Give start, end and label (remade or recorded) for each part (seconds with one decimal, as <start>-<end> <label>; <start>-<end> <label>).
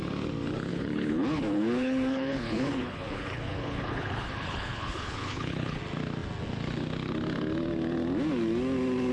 0.0-0.7 recorded; 0.7-5.8 remade; 5.8-9.1 recorded